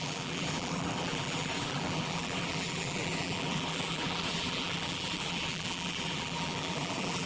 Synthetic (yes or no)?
yes